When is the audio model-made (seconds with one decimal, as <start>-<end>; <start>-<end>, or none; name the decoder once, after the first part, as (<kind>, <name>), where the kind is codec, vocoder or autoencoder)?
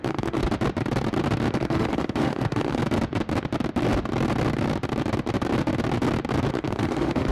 0.0-0.4 (autoencoder, DAC-VAE); 1.5-2.8; 6.5-7.3